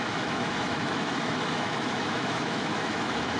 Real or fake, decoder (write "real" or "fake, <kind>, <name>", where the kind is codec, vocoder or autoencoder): fake, autoencoder, DAC-VAE